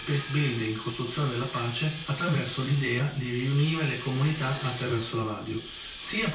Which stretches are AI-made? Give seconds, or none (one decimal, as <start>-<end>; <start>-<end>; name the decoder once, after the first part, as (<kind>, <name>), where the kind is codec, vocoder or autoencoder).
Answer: 2.0-3.0 (vocoder, BigVGAN v2); 4.6-6.3